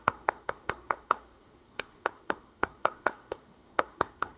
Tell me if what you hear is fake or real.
fake